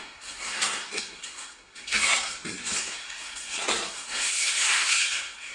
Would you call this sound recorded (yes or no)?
no